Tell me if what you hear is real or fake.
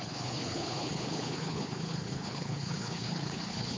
fake